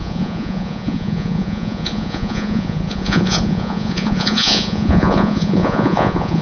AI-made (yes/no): yes